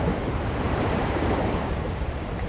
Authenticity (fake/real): fake